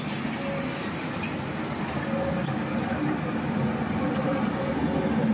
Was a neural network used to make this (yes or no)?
no